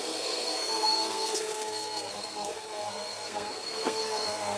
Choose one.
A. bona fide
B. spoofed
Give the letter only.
B